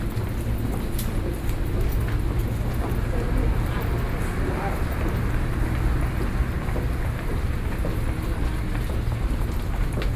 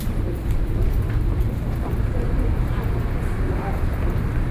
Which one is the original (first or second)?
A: first